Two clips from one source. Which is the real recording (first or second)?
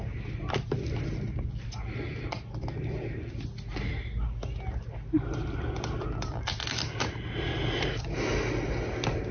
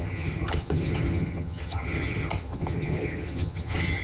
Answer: first